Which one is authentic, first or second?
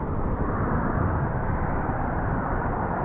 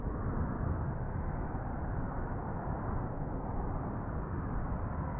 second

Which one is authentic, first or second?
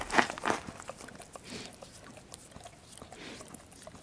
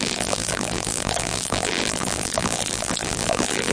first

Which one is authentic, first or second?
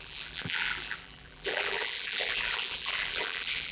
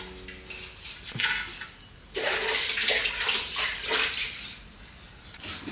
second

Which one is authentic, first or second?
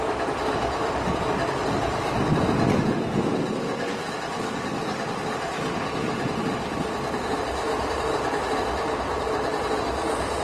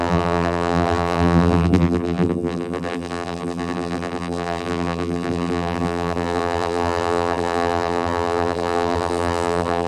first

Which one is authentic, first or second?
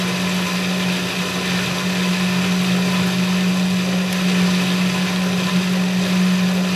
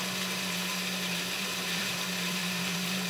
first